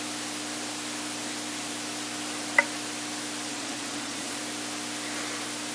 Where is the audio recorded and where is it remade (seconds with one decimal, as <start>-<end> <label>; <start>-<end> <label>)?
0.0-3.5 recorded; 3.5-4.4 remade; 4.4-5.7 recorded